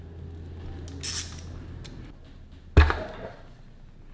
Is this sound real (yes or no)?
yes